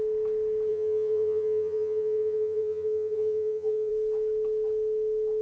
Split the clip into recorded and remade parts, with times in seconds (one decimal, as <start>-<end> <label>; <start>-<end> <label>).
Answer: 0.0-0.7 recorded; 0.7-3.9 remade; 3.9-5.4 recorded